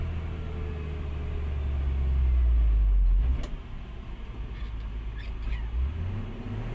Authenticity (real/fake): real